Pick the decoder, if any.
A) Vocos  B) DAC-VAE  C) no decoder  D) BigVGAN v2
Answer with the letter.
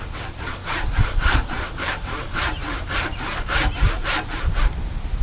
D